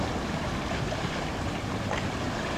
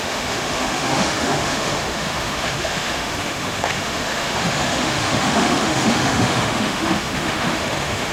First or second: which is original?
first